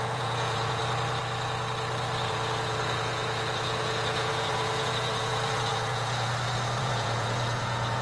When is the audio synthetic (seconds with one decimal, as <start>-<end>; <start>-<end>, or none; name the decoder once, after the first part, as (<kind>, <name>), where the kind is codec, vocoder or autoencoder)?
0.0-0.8 (vocoder, Vocos); 2.3-6.3; 6.8-8.0